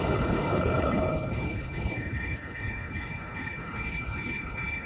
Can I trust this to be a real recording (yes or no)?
no